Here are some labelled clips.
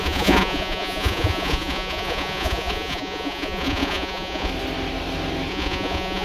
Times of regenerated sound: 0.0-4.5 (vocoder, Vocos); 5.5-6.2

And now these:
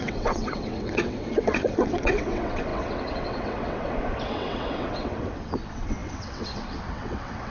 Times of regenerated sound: 0.0-7.5 (vocoder, WaveNeXt)

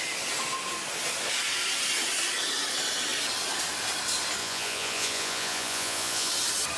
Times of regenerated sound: 4.4-6.3 (vocoder, Vocos)

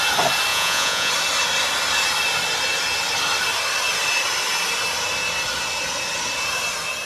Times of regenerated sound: 0.5-1.1 (vocoder, Vocos)

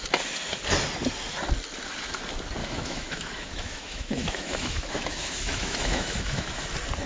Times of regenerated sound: 2.6-6.5 (autoencoder, DAC-VAE)

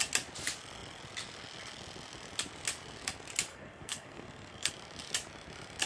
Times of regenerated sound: 3.5-4.7 (codec, SNAC)